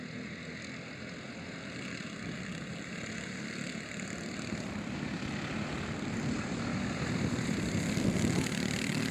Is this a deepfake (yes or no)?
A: yes